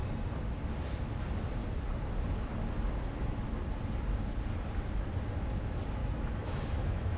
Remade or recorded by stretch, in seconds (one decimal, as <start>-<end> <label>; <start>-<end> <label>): 0.0-6.0 recorded; 6.0-7.2 remade